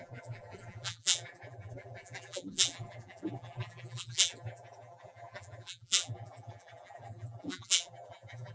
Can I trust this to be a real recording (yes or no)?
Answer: no